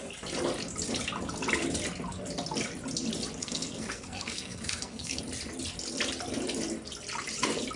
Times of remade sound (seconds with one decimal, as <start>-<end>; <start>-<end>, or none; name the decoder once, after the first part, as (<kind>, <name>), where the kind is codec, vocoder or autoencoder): 3.4-5.2 (codec, SNAC)